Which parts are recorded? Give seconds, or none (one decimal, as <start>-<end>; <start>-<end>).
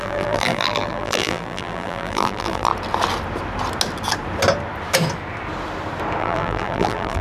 2.7-6.2